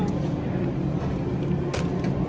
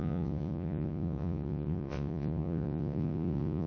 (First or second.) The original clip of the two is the first